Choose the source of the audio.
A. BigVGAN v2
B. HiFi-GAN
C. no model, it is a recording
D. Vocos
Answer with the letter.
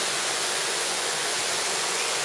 D